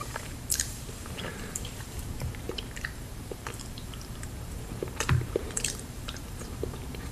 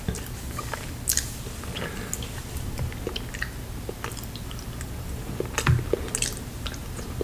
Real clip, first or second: second